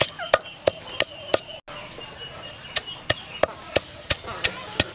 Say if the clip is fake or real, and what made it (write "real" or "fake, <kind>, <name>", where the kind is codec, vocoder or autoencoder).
real